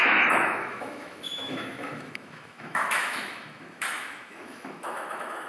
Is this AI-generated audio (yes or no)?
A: yes